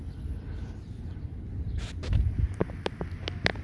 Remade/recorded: recorded